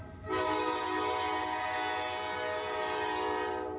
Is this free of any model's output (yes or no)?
yes